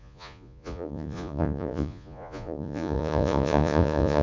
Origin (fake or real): fake